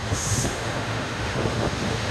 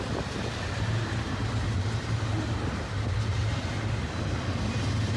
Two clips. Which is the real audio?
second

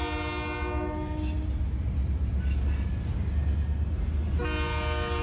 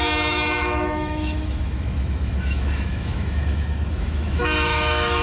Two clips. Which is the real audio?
first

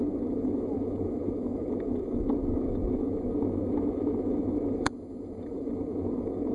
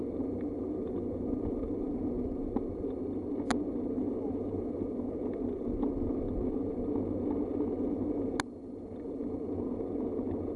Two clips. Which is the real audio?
second